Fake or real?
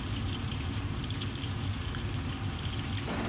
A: real